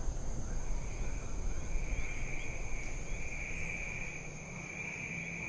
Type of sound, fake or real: real